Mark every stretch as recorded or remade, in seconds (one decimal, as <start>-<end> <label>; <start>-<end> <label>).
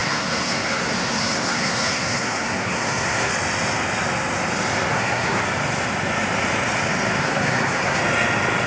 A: 0.0-3.3 remade; 3.3-4.9 recorded; 4.9-5.4 remade; 5.4-7.2 recorded; 7.2-8.0 remade; 8.0-8.7 recorded